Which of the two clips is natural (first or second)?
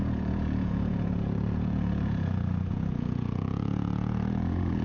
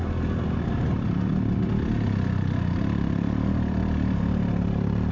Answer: second